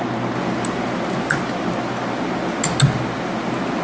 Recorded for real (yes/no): yes